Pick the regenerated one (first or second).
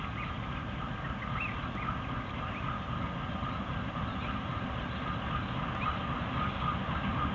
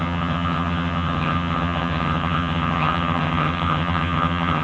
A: second